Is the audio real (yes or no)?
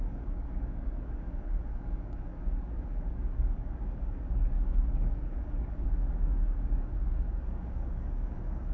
no